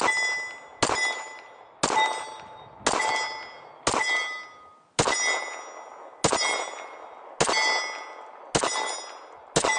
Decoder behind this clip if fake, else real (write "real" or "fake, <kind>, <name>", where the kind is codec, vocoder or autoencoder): real